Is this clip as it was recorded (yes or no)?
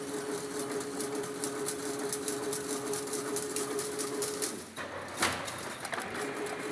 yes